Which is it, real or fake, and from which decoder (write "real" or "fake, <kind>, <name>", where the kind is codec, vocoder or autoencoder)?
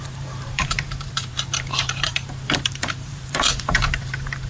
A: fake, vocoder, BigVGAN v2